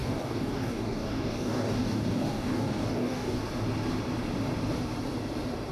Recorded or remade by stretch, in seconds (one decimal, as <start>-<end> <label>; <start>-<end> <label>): 0.0-3.4 remade; 3.4-5.7 recorded

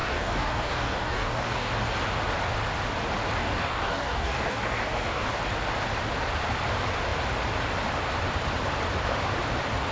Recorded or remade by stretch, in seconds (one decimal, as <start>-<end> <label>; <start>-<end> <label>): 0.0-1.7 remade; 1.7-3.4 recorded; 3.4-5.4 remade; 5.4-9.9 recorded

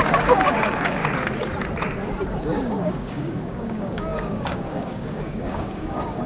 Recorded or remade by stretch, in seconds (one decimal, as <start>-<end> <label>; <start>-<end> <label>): 0.0-1.0 remade; 1.0-2.4 recorded; 2.4-6.3 remade